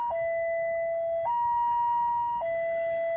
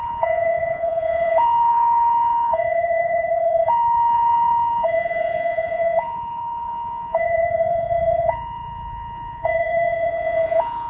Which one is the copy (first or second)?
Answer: second